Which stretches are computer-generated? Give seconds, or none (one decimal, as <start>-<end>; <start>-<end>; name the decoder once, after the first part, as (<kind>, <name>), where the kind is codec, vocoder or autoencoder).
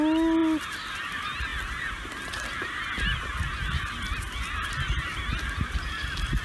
none